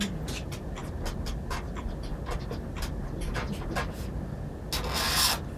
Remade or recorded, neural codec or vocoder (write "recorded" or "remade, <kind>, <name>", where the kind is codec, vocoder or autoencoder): recorded